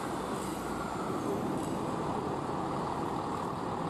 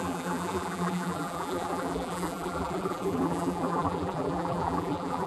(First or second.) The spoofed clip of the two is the second